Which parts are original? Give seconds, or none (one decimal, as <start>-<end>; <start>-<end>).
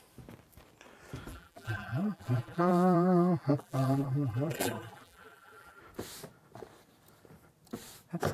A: 0.0-1.3; 5.8-8.3